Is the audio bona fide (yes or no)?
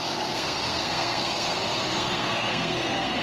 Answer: no